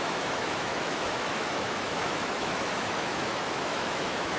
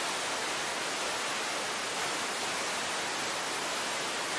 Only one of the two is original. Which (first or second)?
second